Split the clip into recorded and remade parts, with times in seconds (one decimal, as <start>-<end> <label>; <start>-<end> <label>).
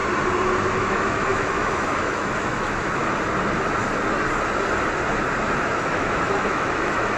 0.0-0.6 recorded; 0.6-3.0 remade; 3.0-5.8 recorded; 5.8-7.2 remade